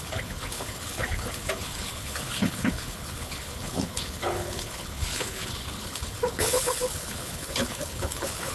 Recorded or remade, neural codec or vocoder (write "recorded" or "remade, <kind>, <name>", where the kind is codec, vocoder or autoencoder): remade, codec, HILCodec